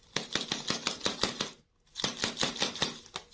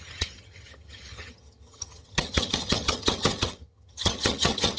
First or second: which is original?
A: first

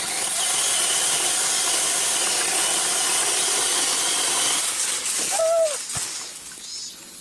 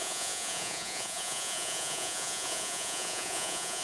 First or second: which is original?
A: first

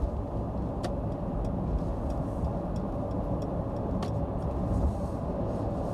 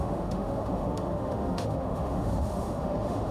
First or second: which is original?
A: first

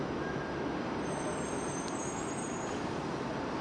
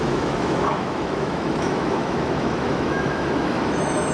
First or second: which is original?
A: first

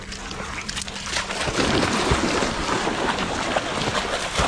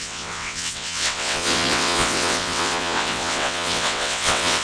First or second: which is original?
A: first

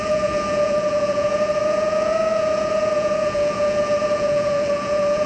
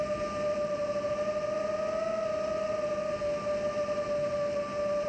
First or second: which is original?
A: second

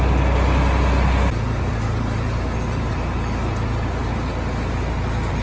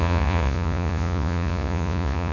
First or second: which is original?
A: first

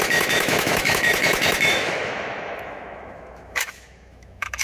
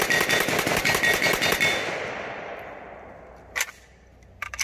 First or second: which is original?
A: second